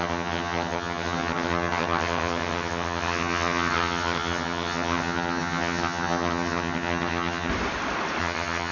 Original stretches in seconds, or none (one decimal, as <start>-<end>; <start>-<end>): 7.5-8.2

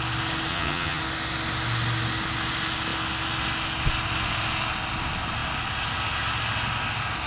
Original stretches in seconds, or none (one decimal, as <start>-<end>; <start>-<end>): 0.0-0.5; 1.0-7.3